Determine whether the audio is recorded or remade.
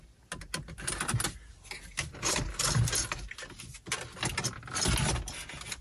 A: recorded